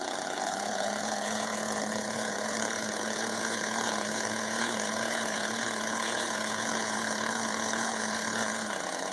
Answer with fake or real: fake